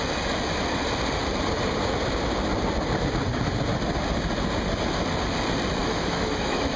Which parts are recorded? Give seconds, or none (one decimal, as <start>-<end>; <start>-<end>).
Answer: 0.0-5.8